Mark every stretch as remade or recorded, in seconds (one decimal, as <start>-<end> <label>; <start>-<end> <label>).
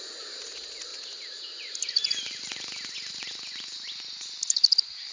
0.0-5.1 recorded